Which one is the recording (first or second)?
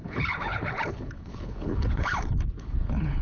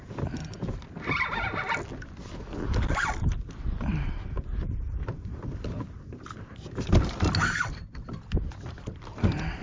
second